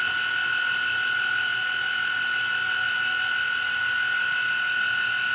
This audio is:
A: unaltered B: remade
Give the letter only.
A